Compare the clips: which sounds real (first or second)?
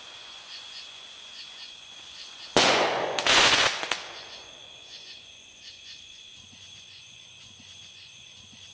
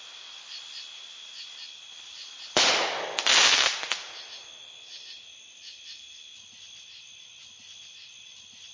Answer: second